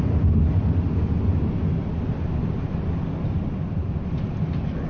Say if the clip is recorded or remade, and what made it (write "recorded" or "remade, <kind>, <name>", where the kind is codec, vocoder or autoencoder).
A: recorded